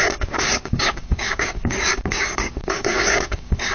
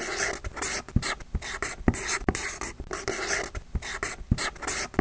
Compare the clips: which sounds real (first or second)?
second